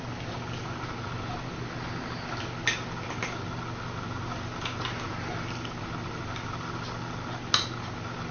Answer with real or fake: real